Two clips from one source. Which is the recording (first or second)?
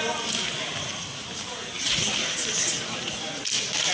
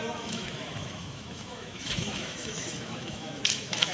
first